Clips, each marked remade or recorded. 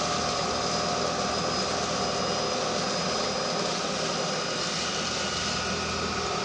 recorded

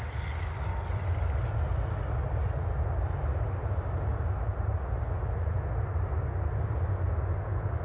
recorded